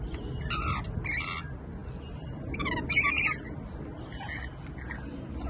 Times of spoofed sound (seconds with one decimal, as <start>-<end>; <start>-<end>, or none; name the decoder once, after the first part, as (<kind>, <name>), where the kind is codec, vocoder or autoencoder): none